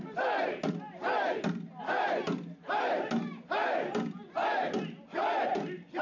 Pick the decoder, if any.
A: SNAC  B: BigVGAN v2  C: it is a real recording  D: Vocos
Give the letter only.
C